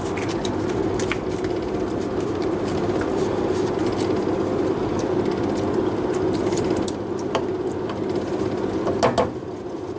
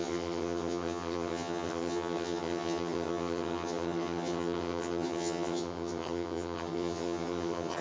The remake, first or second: second